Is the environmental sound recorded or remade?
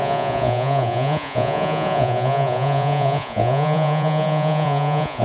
remade